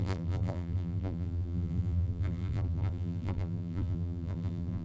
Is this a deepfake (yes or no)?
yes